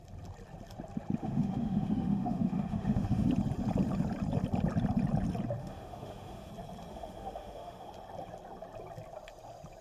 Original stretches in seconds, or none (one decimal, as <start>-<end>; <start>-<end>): 0.0-1.2; 3.3-5.6; 6.5-6.9; 7.9-9.8